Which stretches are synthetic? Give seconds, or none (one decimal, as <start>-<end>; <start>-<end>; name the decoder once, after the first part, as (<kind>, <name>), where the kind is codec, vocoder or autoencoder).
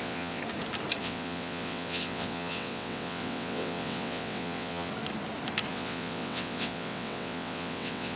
0.0-0.4 (vocoder, WaveNeXt); 1.0-4.9; 5.7-8.2